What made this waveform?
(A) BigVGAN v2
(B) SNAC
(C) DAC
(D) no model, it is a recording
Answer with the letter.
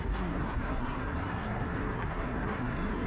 B